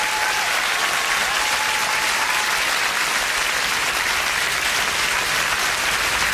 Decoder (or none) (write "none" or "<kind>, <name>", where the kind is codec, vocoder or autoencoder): none